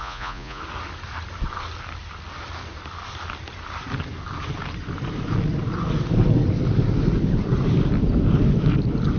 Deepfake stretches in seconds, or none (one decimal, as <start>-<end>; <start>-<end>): 0.0-0.6

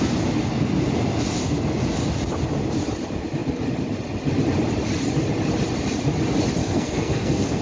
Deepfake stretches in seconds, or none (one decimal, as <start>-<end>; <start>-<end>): 6.6-7.6

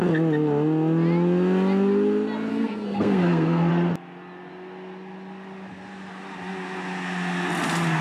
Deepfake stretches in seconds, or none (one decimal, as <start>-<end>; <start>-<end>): 2.5-3.7

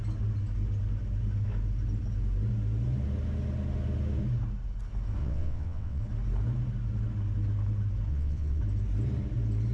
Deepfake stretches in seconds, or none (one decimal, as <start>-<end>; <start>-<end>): 5.2-6.0; 8.1-8.6

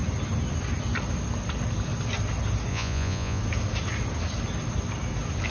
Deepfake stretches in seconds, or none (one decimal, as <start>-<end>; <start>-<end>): 2.7-3.4

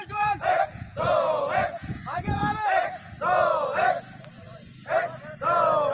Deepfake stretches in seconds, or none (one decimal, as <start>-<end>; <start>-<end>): 0.0-2.4